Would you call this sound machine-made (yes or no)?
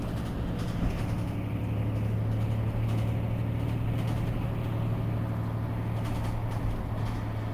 no